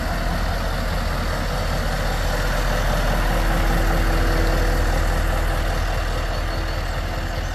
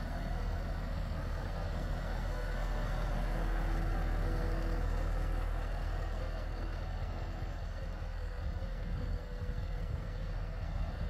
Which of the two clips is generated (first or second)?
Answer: second